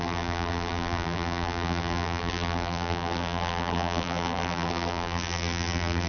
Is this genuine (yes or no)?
no